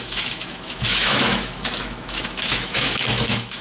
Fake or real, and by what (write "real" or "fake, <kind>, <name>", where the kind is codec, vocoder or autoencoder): fake, autoencoder, DAC-VAE